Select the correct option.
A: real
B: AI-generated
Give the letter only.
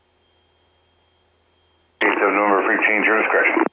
A